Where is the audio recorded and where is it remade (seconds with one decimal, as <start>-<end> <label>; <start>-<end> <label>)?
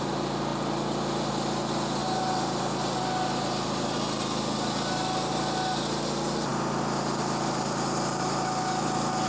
0.0-9.3 recorded